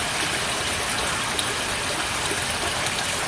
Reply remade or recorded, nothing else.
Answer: recorded